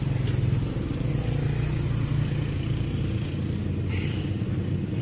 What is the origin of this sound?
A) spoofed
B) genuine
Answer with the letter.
B